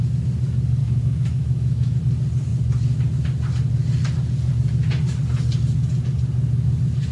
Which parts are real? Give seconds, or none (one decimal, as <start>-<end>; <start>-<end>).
0.0-0.8; 2.0-7.1

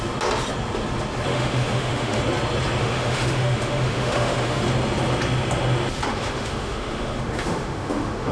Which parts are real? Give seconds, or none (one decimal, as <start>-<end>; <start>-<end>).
0.0-1.3; 2.2-2.8; 4.6-6.1

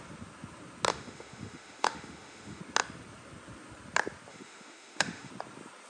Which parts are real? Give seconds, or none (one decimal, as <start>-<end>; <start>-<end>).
0.0-0.9; 2.6-4.3; 5.3-5.9